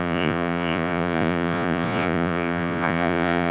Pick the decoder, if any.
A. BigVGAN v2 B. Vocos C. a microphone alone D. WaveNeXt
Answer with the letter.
B